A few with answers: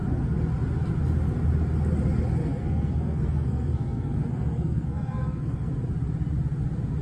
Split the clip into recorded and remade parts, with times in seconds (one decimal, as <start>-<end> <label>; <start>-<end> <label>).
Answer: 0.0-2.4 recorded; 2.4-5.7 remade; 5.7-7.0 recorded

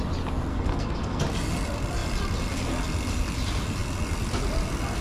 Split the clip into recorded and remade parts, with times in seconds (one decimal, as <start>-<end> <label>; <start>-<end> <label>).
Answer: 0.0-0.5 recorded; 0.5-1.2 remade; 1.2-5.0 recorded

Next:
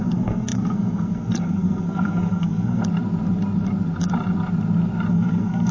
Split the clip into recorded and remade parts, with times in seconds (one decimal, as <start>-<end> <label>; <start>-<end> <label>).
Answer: 0.0-2.8 remade; 2.8-5.1 recorded; 5.1-5.7 remade

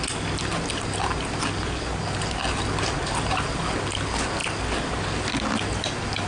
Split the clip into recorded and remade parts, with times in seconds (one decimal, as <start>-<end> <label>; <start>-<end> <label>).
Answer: 0.0-6.3 recorded

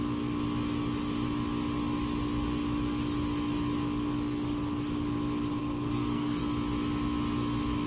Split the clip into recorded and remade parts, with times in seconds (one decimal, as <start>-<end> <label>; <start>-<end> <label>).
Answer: 0.0-5.6 recorded; 5.6-6.4 remade; 6.4-7.9 recorded

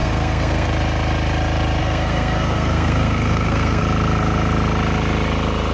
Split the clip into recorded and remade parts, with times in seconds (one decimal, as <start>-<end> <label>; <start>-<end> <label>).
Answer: 0.0-0.7 remade; 0.7-1.8 recorded; 1.8-3.8 remade; 3.8-5.7 recorded

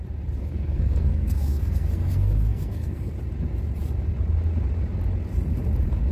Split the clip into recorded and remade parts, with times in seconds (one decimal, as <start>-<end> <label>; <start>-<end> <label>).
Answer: 0.0-0.4 recorded; 0.4-3.1 remade; 3.1-6.1 recorded